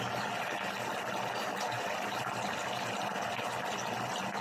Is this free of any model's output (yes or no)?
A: yes